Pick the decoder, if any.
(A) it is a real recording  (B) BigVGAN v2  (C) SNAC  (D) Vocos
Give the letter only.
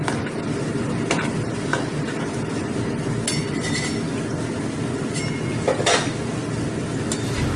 A